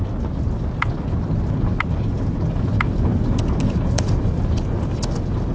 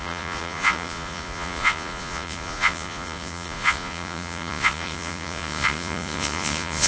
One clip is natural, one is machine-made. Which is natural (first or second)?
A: first